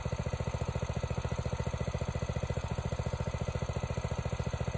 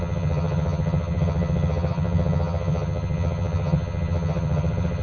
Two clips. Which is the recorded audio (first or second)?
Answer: first